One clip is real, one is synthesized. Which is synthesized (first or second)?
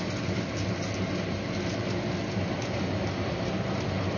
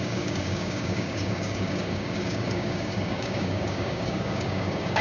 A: second